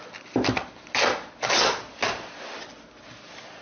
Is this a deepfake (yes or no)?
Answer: no